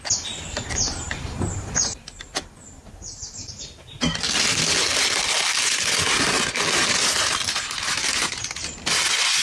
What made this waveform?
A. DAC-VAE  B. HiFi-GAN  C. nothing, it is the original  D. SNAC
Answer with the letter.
C